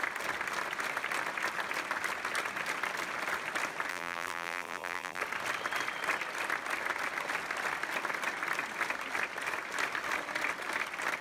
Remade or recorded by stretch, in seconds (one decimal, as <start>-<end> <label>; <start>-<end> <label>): 0.0-3.9 recorded; 3.9-5.2 remade; 5.2-11.2 recorded